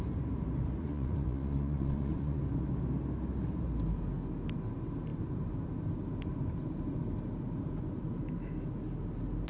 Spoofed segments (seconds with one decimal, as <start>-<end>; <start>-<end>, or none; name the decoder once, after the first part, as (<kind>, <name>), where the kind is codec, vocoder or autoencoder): 0.8-2.4 (vocoder, Vocos)